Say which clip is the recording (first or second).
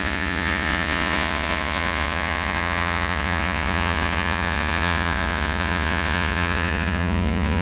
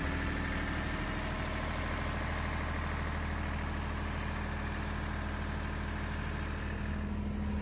second